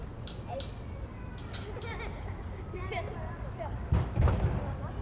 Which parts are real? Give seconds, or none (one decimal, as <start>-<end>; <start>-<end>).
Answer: 0.0-5.0